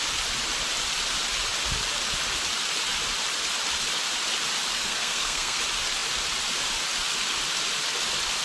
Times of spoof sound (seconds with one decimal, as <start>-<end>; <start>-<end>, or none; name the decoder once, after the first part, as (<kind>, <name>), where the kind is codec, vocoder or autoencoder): 4.7-5.6 (codec, SNAC)